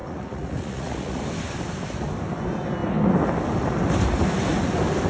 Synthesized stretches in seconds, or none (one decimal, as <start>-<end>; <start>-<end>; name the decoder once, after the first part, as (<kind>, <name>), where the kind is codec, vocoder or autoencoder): 0.0-1.2 (vocoder, Vocos)